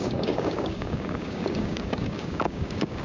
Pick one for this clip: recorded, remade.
remade